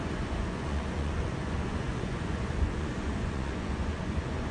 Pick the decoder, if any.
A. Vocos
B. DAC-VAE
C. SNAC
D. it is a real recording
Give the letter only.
A